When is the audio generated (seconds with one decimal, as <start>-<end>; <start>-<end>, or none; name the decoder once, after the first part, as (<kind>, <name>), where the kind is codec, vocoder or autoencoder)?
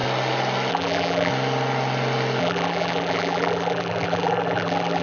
0.7-1.3 (vocoder, BigVGAN v2); 2.4-5.0